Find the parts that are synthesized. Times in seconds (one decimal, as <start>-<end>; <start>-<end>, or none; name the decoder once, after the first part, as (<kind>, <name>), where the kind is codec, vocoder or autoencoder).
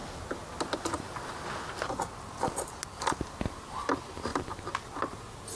none